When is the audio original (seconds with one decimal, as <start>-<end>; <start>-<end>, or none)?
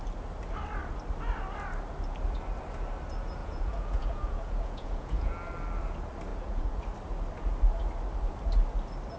0.0-3.4; 5.3-6.3; 6.8-9.2